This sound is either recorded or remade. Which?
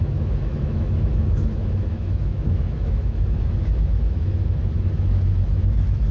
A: remade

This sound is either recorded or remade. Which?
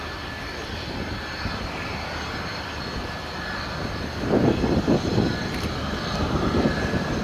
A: recorded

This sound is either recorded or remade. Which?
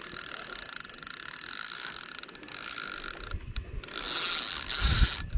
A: recorded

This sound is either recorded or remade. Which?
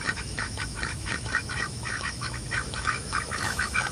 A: remade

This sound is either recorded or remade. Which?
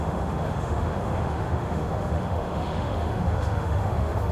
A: remade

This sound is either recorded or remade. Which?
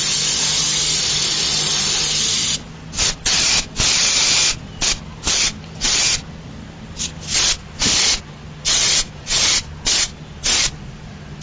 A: recorded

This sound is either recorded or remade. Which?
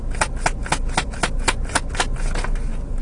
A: recorded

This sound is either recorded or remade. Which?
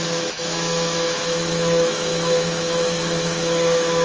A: remade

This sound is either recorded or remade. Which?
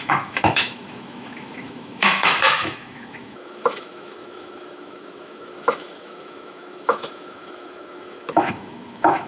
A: remade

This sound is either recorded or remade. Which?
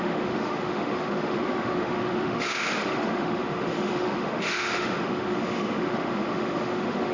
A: remade